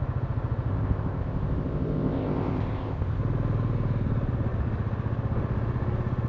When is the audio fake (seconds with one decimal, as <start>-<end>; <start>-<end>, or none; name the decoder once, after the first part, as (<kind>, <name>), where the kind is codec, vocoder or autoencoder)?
0.7-3.2 (codec, ZipCodec)